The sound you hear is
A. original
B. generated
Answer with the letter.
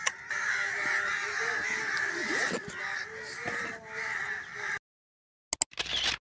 A